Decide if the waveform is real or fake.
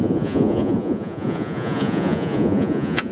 fake